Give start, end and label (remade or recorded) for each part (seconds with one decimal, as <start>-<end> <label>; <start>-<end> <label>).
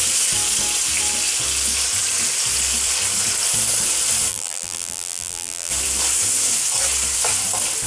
0.0-4.3 recorded; 4.3-5.7 remade; 5.7-7.9 recorded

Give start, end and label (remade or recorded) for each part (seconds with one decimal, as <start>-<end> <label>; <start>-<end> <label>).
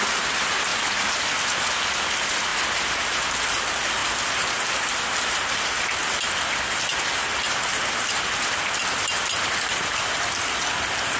0.0-11.2 recorded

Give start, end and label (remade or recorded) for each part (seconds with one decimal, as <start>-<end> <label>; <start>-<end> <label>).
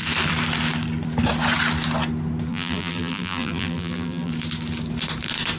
0.0-2.5 recorded; 2.5-4.3 remade; 4.3-5.6 recorded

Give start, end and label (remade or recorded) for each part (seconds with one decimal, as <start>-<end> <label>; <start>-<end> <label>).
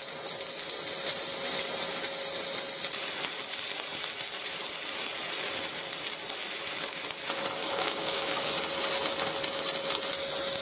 0.0-7.6 recorded; 7.6-8.5 remade; 8.5-10.6 recorded